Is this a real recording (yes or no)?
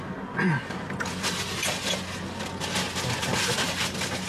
yes